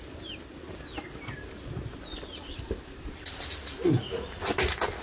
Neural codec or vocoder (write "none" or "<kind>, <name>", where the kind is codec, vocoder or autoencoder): none